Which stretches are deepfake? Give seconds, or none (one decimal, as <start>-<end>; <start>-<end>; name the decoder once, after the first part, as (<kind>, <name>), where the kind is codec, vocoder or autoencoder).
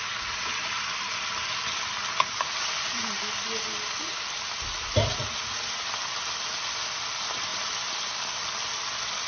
none